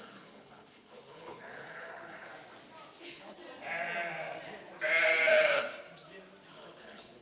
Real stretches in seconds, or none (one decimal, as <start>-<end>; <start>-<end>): 2.3-3.0; 3.4-5.3; 5.7-6.5